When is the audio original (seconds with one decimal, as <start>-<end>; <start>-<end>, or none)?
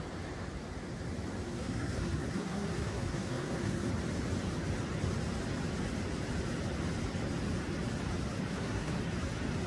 0.0-1.5; 3.9-8.5; 9.0-9.7